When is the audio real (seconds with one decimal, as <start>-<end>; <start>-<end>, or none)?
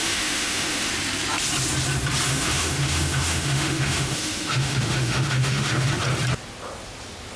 0.9-2.3; 5.9-7.4